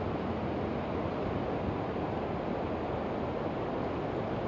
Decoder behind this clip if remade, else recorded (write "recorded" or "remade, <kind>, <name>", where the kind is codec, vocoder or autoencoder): recorded